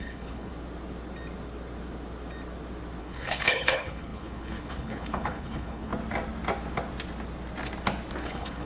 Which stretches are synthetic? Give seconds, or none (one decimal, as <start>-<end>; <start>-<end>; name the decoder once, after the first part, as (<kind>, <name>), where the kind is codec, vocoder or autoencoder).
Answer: 0.0-0.5 (codec, HILCodec); 3.0-5.9; 8.2-8.7